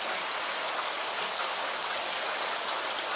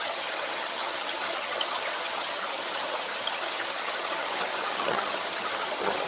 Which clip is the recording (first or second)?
first